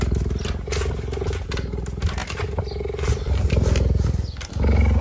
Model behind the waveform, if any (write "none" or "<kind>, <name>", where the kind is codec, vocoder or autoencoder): none